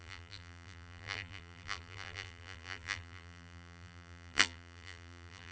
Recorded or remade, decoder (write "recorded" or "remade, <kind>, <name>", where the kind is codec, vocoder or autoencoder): remade, vocoder, BigVGAN v2